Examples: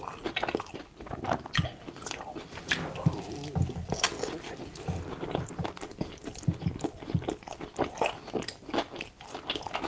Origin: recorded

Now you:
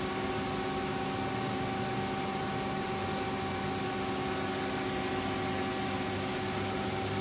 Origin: recorded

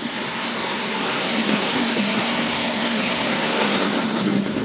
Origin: remade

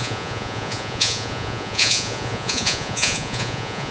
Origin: remade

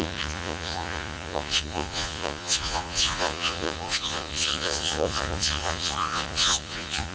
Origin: remade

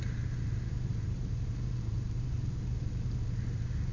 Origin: remade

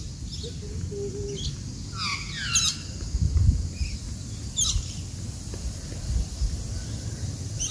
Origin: recorded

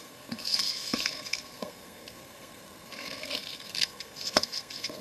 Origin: remade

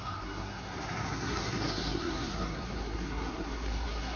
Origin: remade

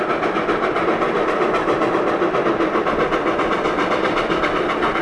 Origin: recorded